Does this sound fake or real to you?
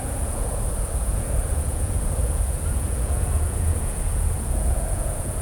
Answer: fake